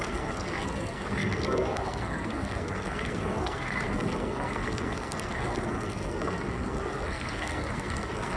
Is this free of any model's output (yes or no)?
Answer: no